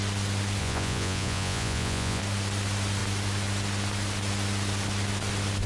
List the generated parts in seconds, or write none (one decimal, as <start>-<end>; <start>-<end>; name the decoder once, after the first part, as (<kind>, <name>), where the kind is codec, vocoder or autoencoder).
0.6-2.2 (vocoder, Vocos)